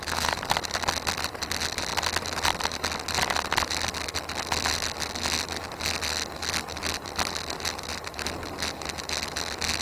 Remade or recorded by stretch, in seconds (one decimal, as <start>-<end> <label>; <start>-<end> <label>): 0.0-9.8 recorded